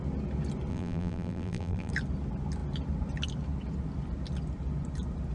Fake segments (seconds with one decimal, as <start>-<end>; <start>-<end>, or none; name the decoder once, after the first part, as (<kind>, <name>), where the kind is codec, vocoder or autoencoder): 0.7-1.9 (vocoder, BigVGAN v2)